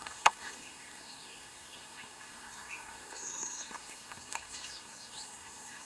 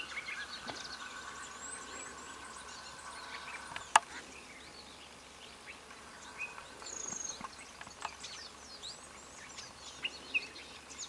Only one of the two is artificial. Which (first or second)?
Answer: first